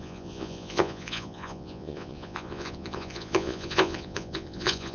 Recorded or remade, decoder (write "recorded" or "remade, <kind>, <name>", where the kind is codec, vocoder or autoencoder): remade, vocoder, Vocos